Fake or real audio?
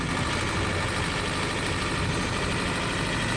real